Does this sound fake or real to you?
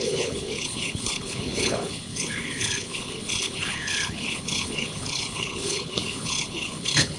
fake